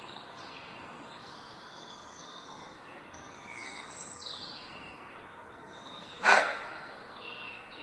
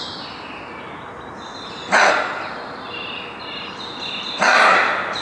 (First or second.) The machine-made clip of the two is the first